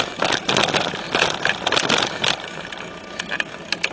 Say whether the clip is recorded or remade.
recorded